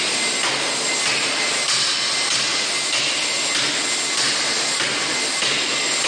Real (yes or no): yes